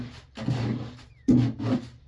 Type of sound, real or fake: real